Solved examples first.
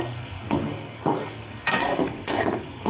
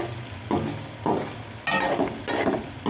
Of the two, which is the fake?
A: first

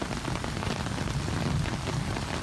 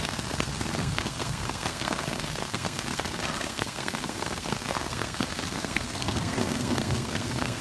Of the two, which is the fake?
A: second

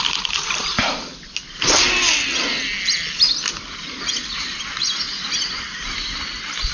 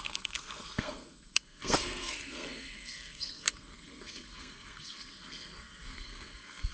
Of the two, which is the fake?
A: second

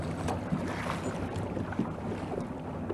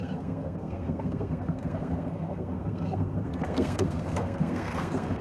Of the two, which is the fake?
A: second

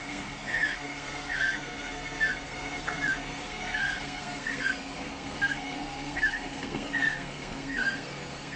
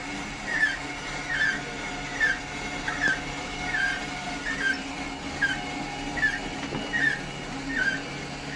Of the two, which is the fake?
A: first